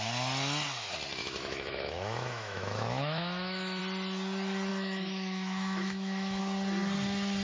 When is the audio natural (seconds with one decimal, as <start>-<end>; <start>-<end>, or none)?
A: 0.0-1.2; 3.8-4.7; 6.4-7.4